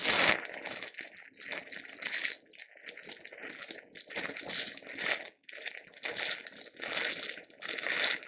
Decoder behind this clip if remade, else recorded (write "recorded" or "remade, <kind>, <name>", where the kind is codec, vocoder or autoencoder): recorded